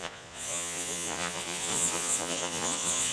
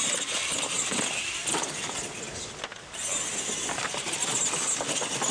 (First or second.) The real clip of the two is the second